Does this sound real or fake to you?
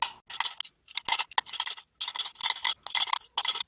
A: real